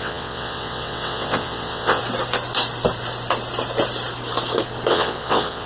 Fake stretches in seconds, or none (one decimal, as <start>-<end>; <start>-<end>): 0.0-2.0; 4.9-5.7